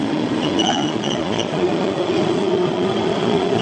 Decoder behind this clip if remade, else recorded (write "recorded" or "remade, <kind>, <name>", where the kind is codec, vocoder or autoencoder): remade, vocoder, Vocos